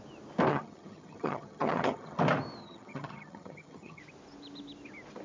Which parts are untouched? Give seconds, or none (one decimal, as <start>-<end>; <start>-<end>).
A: 0.0-0.5; 2.2-2.6; 4.0-5.2